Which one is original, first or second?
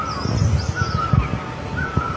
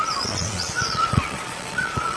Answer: first